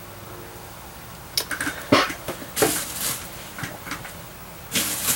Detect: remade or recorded recorded